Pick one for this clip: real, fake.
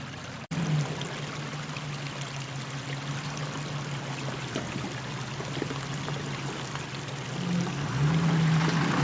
real